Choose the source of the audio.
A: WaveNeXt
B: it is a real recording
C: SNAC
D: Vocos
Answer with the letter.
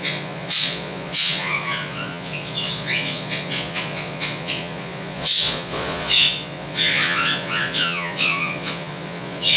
D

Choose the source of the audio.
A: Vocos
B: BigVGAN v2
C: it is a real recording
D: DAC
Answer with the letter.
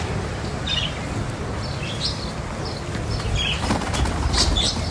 C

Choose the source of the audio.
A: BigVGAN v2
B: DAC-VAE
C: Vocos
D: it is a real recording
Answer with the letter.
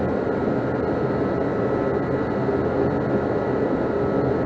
D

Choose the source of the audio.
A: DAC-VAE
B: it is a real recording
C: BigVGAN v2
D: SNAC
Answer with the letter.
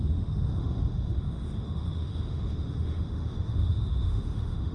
A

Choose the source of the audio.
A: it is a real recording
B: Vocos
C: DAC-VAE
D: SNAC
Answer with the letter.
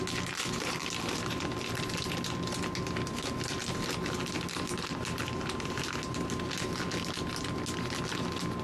A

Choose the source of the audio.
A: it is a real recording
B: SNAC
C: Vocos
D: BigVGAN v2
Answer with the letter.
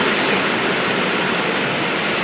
A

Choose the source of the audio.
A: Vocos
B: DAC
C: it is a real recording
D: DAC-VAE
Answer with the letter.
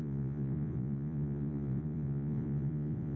A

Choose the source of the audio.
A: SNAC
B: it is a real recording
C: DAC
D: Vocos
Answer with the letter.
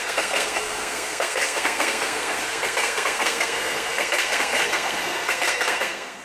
A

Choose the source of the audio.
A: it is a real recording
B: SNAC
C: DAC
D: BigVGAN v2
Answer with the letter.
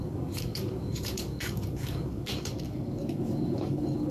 C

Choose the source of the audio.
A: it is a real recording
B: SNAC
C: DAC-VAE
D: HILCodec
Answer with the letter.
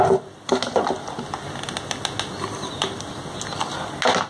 A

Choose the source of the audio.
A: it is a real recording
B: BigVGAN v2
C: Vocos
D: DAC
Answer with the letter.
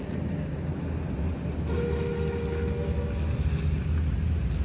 A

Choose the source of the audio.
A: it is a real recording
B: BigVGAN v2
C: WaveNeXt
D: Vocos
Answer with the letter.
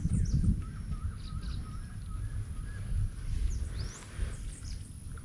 A